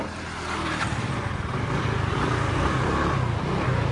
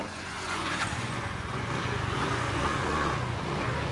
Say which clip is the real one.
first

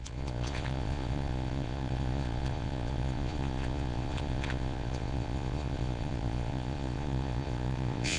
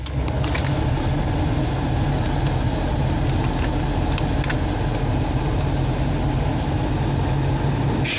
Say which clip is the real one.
second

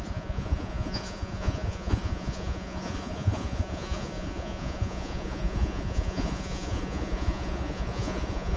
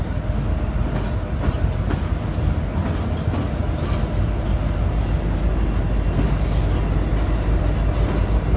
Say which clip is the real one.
second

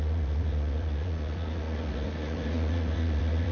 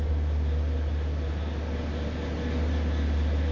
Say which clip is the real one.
second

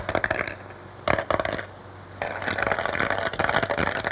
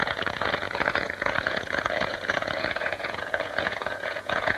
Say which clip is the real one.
first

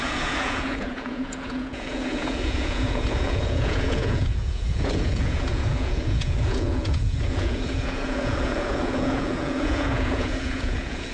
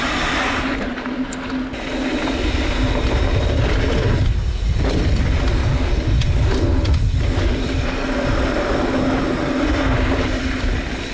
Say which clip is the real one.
second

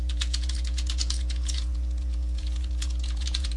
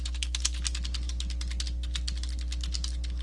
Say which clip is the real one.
second